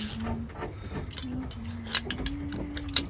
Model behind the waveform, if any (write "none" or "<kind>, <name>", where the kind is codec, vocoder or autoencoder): none